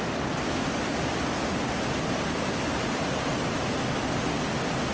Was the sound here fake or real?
real